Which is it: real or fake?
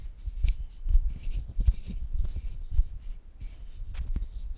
fake